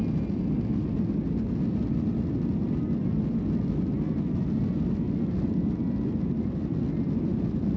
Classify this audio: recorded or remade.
recorded